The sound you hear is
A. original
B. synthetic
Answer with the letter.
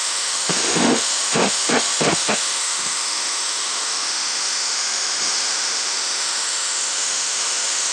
B